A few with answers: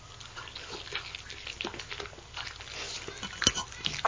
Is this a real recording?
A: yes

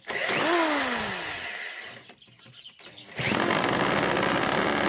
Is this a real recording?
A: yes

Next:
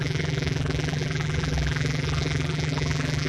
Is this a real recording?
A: no